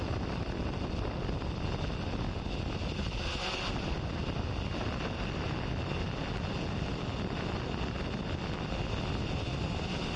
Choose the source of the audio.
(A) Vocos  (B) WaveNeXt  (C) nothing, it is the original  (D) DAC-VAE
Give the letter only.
C